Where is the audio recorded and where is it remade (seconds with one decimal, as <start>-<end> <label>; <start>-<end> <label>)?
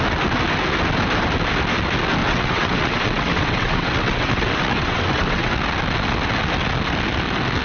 0.0-2.2 recorded; 2.2-5.5 remade; 5.5-7.6 recorded